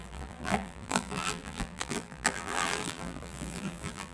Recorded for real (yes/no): no